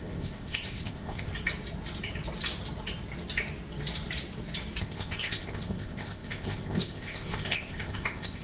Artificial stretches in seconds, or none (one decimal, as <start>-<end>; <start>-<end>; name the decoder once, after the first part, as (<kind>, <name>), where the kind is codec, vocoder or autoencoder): 0.0-1.3 (codec, ZipCodec); 4.8-8.4